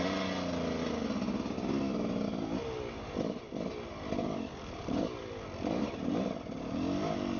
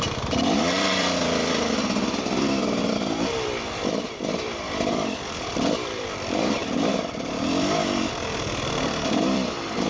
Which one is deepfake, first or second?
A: second